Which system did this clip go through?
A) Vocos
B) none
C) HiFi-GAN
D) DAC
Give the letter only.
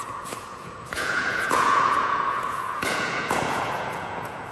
A